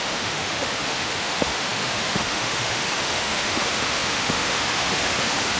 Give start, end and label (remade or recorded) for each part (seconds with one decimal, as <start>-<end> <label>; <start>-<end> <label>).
0.0-5.6 remade

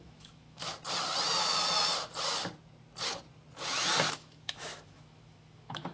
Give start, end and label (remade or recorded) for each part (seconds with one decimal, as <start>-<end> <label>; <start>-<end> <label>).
0.0-0.6 remade; 0.6-4.1 recorded; 4.1-5.9 remade

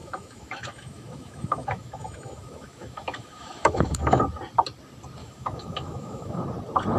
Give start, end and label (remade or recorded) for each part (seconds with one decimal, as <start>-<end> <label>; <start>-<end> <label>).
0.0-4.2 remade; 4.2-5.2 recorded; 5.2-6.4 remade; 6.4-7.0 recorded